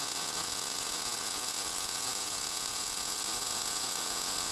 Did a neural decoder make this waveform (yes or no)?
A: yes